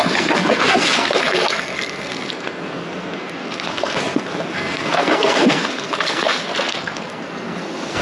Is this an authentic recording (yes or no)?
no